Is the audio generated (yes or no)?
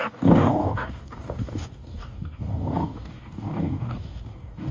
yes